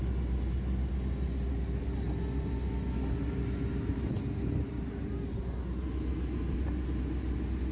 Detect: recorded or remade recorded